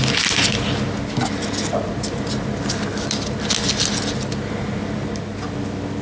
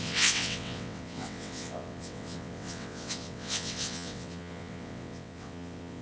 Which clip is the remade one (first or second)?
second